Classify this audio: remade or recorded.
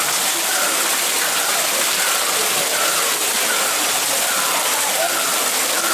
recorded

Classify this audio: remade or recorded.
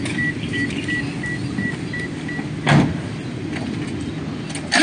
recorded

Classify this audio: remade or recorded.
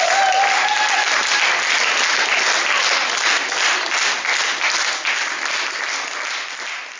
recorded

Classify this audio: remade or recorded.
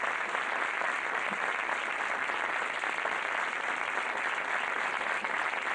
recorded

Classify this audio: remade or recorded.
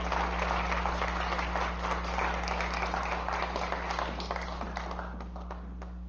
recorded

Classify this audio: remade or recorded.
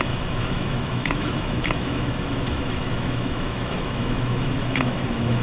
remade